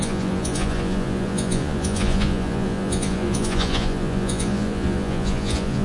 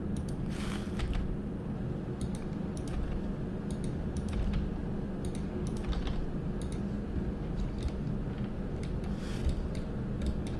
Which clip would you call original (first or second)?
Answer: second